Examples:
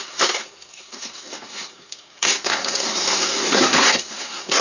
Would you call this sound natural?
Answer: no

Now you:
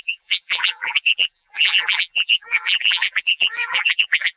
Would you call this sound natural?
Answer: no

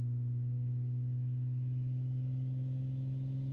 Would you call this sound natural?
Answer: no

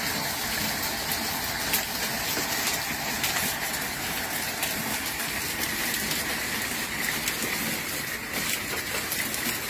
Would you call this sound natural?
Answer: yes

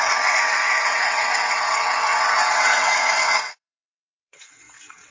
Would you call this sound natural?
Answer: no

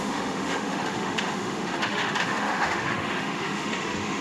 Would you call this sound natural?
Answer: no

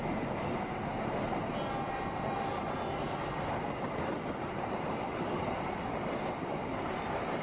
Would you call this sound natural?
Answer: yes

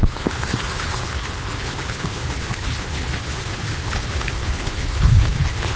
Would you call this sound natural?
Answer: no